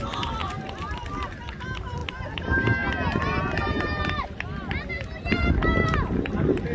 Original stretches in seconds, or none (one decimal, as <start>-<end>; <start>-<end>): 0.0-6.7